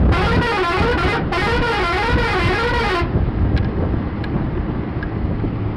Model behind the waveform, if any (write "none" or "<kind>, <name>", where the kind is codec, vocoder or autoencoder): none